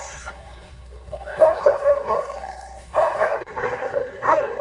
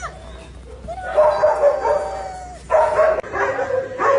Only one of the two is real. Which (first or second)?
second